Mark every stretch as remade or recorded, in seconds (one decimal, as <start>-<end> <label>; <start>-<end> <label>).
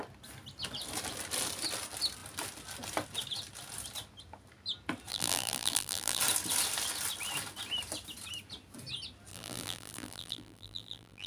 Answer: 0.0-5.1 recorded; 5.1-6.2 remade; 6.2-9.3 recorded; 9.3-11.3 remade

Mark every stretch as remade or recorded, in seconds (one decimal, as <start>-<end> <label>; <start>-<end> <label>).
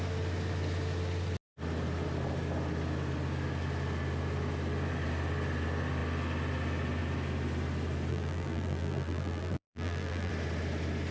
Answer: 0.0-8.1 recorded; 8.1-10.3 remade; 10.3-11.1 recorded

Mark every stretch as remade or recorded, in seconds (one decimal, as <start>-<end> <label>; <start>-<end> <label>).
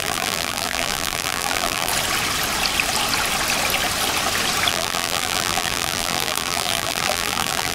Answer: 0.0-1.9 remade; 1.9-4.7 recorded; 4.7-7.7 remade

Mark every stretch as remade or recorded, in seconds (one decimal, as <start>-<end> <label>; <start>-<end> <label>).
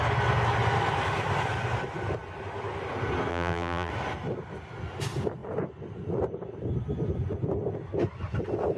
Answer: 0.0-3.3 recorded; 3.3-3.9 remade; 3.9-8.8 recorded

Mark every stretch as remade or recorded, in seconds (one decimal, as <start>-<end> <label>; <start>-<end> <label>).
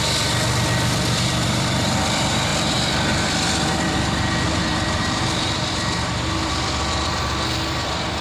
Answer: 0.0-8.2 remade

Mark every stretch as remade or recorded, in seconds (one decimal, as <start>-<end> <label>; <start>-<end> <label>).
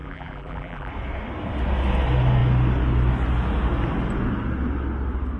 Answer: 0.0-0.9 remade; 0.9-5.4 recorded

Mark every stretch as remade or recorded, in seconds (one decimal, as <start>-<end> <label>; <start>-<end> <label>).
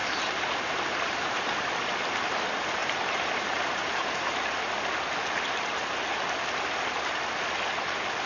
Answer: 0.0-1.7 remade; 1.7-2.8 recorded; 2.8-4.7 remade; 4.7-8.3 recorded